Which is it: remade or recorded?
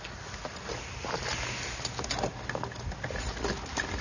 recorded